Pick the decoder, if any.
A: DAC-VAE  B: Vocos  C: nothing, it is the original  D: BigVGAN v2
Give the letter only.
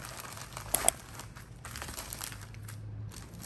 C